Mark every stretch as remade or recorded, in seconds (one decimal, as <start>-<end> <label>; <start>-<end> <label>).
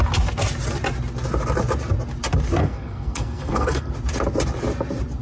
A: 0.0-2.6 recorded; 2.6-3.9 remade; 3.9-5.2 recorded